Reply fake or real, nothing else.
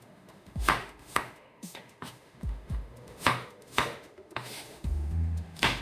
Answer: fake